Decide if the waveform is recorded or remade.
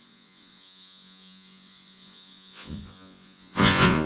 remade